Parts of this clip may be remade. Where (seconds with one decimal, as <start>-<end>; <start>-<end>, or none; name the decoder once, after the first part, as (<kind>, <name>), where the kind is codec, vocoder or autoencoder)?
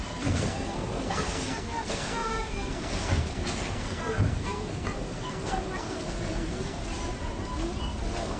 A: 0.0-6.8 (codec, SNAC); 7.8-8.4